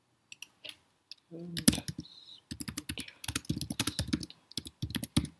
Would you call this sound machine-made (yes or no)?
no